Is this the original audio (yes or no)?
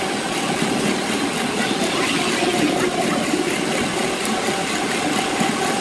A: yes